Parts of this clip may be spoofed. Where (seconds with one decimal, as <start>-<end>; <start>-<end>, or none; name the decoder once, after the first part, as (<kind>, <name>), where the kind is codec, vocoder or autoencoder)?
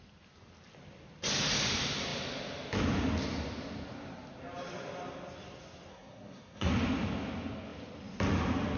5.9-6.7 (codec, SNAC)